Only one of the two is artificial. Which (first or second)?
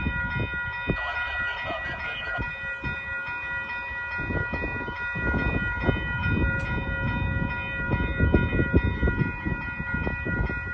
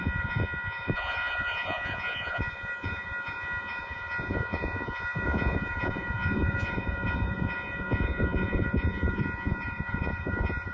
second